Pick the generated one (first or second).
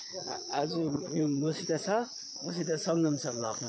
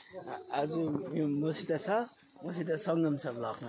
first